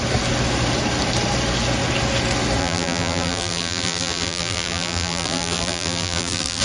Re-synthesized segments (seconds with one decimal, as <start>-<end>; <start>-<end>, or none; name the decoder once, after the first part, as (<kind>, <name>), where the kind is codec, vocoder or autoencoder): 2.6-6.6 (vocoder, BigVGAN v2)